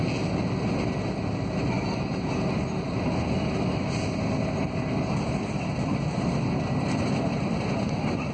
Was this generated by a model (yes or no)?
no